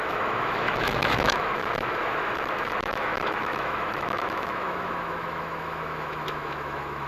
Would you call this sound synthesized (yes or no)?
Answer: yes